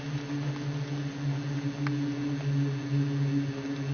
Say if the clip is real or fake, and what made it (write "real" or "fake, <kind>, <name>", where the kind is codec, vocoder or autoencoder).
real